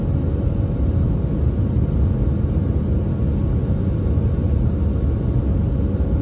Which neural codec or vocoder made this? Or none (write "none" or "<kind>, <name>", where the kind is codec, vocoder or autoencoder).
none